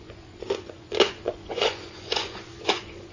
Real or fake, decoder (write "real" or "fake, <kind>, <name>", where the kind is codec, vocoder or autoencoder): fake, vocoder, Vocos